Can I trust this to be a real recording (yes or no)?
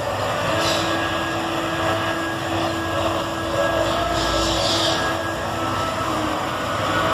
yes